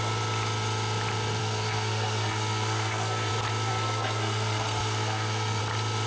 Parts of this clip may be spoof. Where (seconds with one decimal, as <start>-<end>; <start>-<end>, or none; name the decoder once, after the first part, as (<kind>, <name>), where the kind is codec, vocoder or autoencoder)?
1.4-3.3 (codec, SNAC); 3.7-5.6